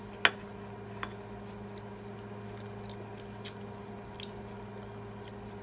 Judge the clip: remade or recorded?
recorded